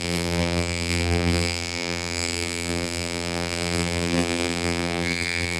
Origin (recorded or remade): remade